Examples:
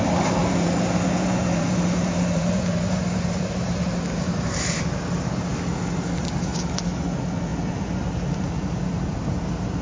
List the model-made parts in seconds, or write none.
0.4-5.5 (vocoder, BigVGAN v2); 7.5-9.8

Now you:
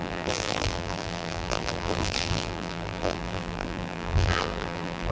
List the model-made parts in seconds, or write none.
0.0-5.1 (vocoder, BigVGAN v2)

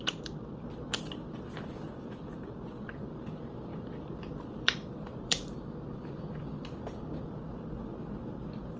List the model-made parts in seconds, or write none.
3.7-6.3 (vocoder, BigVGAN v2)

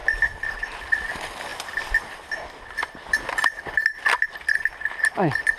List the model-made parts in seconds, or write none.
0.0-0.8 (vocoder, BigVGAN v2)

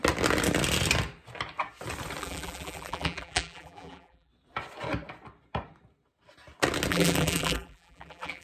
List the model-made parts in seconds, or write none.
2.2-4.3 (vocoder, BigVGAN v2); 6.9-8.4

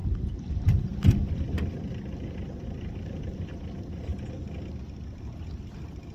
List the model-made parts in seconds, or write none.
0.0-4.1 (vocoder, BigVGAN v2); 5.6-6.1